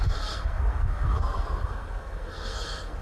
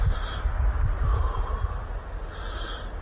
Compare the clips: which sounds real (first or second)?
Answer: second